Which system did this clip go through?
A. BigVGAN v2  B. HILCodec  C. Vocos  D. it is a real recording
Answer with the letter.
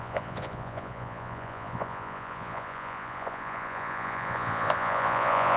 C